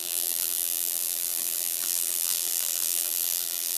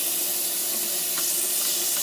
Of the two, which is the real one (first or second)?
second